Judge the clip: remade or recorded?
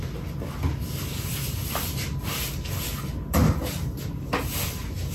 recorded